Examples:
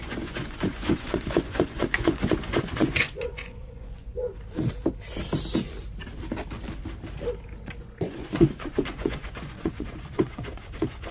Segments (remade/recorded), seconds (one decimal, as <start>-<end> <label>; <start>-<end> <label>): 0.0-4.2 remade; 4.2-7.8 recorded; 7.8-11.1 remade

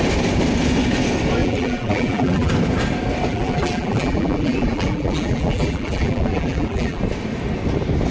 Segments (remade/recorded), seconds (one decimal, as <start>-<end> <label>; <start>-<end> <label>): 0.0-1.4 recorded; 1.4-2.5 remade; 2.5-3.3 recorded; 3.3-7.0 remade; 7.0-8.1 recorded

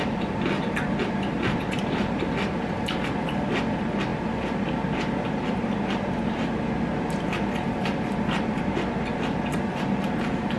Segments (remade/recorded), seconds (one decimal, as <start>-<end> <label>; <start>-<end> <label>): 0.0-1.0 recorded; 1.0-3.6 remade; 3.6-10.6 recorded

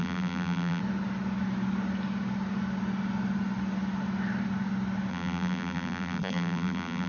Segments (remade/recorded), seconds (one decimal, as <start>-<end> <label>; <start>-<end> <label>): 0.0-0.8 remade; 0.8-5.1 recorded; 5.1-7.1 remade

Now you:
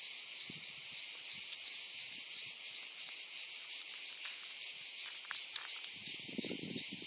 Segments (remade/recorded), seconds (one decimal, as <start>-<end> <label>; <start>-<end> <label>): 0.0-7.1 recorded

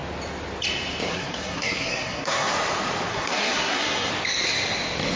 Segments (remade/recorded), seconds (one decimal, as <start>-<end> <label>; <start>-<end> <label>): 0.0-1.1 recorded; 1.1-2.5 remade; 2.5-3.1 recorded; 3.1-4.1 remade; 4.1-5.2 recorded

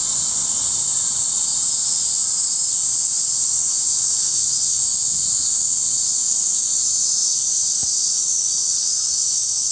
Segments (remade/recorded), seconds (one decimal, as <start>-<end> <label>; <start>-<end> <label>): 0.0-3.7 recorded; 3.7-9.7 remade

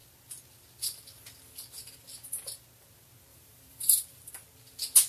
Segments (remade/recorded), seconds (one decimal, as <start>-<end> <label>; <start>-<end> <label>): 0.0-3.3 recorded; 3.3-4.3 remade; 4.3-5.1 recorded